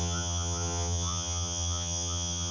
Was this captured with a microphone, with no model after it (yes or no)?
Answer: no